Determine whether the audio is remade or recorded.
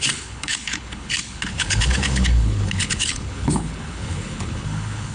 remade